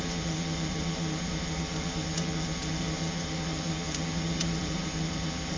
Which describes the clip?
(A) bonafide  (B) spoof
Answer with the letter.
B